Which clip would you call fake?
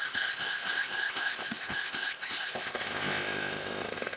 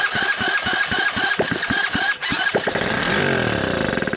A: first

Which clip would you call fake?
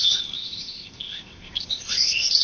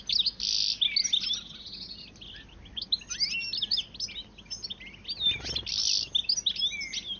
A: first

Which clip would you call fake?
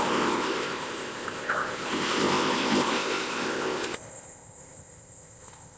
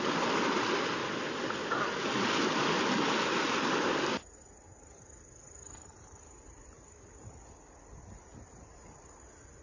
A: first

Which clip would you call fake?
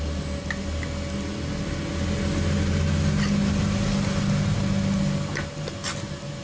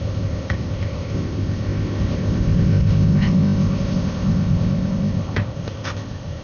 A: second